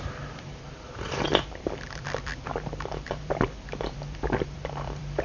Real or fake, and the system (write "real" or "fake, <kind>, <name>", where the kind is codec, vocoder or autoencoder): fake, vocoder, BigVGAN v2